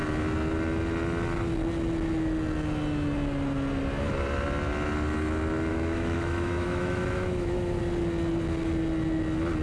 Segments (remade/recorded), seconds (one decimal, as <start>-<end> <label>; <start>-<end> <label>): 0.0-5.7 recorded; 5.7-7.8 remade; 7.8-9.6 recorded